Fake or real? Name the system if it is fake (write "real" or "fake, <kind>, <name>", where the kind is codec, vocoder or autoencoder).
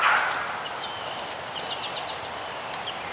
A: real